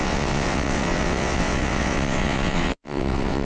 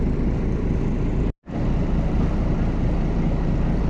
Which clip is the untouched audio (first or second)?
second